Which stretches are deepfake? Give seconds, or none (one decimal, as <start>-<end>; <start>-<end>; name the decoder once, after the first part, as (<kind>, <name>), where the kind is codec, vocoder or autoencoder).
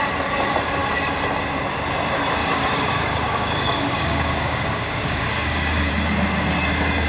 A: 2.4-5.9 (codec, DAC)